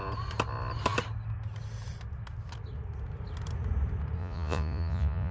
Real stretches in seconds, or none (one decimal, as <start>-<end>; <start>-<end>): 0.0-4.2